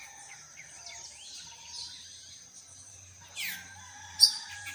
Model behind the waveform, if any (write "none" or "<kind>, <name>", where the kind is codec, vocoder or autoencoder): vocoder, BigVGAN v2